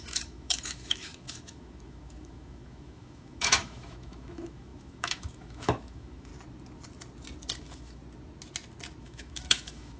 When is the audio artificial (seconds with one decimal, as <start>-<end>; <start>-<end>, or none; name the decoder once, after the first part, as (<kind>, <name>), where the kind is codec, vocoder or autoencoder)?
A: 0.0-6.3 (autoencoder, DAC-VAE); 7.6-8.0; 9.0-10.0